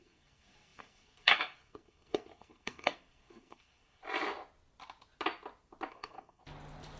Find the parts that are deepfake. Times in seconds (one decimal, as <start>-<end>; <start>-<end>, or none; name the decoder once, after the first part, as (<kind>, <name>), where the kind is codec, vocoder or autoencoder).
0.0-4.0 (codec, SNAC); 5.9-6.4